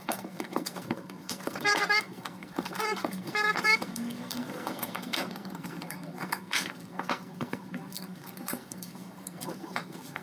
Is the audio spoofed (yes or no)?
yes